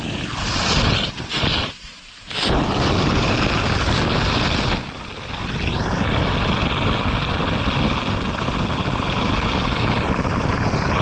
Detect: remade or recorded recorded